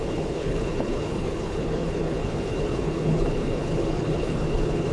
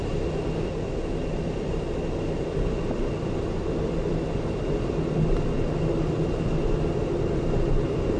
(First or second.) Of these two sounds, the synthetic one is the first